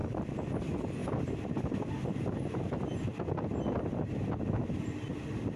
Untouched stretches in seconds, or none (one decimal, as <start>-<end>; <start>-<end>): 1.0-4.4